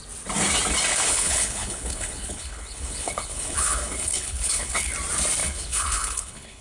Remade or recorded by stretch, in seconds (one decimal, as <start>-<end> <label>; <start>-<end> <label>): 0.0-0.9 recorded; 0.9-4.9 remade; 4.9-5.4 recorded; 5.4-6.6 remade